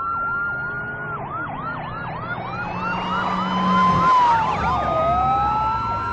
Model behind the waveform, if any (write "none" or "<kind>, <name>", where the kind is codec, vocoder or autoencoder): none